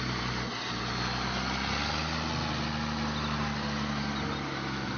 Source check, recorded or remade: recorded